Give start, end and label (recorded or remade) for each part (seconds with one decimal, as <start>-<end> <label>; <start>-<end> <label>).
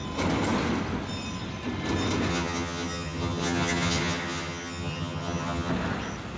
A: 0.0-2.3 recorded; 2.3-5.7 remade; 5.7-6.4 recorded